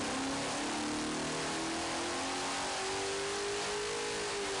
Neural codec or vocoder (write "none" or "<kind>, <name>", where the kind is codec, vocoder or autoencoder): none